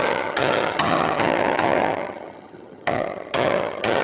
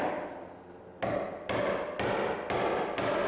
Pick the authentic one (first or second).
second